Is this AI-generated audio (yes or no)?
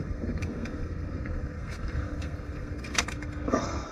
yes